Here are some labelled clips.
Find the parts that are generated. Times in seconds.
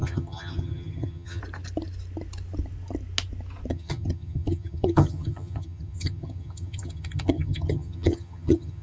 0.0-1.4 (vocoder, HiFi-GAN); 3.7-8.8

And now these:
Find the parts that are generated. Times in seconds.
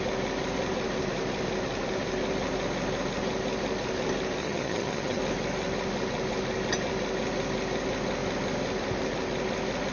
4.4-5.2 (vocoder, HiFi-GAN)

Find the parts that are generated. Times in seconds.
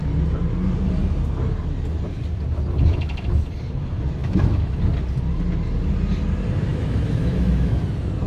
4.2-4.8 (autoencoder, DAC-VAE); 6.7-7.8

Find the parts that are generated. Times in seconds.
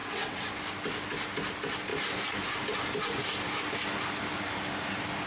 0.0-0.5 (vocoder, WaveNeXt)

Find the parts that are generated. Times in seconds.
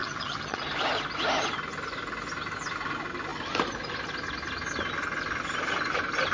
0.0-0.6 (vocoder, HiFi-GAN)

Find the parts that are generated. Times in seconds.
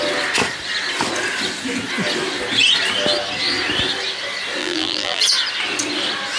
4.6-5.2 (vocoder, BigVGAN v2)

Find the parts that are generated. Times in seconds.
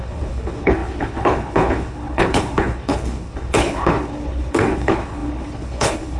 0.0-6.2 (codec, HILCodec)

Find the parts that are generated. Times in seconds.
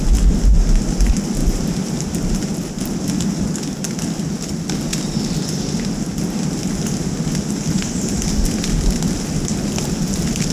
1.4-2.4 (vocoder, BigVGAN v2)